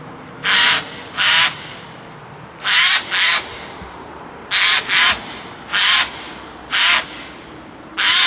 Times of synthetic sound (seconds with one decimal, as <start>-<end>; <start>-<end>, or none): none